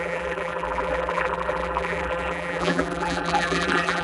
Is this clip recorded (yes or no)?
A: no